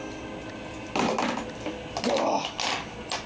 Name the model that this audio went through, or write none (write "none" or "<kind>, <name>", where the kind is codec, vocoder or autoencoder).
none